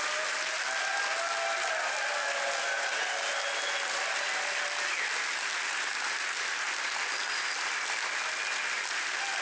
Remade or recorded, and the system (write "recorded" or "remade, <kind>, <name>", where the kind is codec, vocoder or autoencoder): recorded